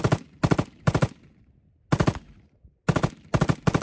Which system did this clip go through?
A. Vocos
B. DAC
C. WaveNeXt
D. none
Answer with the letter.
D